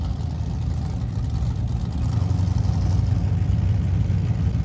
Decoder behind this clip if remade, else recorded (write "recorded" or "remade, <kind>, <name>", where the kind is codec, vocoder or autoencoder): recorded